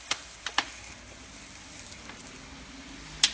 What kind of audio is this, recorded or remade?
recorded